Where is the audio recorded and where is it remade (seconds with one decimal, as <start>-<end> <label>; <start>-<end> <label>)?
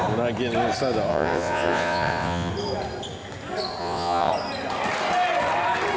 0.0-1.1 recorded; 1.1-2.5 remade; 2.5-3.8 recorded; 3.8-4.3 remade; 4.3-6.0 recorded